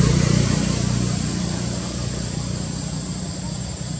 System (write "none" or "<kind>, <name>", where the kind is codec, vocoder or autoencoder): none